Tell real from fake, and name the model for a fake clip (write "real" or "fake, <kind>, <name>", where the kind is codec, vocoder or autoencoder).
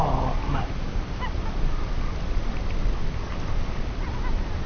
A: real